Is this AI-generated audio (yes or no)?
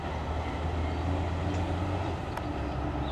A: no